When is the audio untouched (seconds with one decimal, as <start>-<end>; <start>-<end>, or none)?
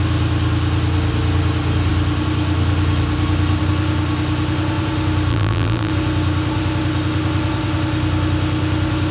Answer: 0.0-5.3; 5.9-9.1